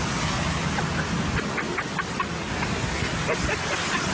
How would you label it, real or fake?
real